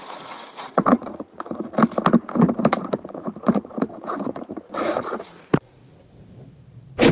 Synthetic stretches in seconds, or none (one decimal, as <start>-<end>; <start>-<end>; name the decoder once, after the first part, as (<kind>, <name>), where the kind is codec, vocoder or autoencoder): 0.0-1.8 (vocoder, Vocos); 2.8-5.8